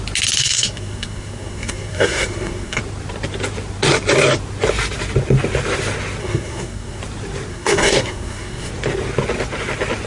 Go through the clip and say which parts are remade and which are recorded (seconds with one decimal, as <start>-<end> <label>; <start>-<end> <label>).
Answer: 0.0-0.4 recorded; 0.4-2.8 remade; 2.8-6.2 recorded; 6.2-7.0 remade; 7.0-7.5 recorded; 7.5-8.7 remade; 8.7-10.1 recorded